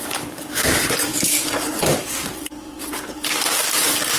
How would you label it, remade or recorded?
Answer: remade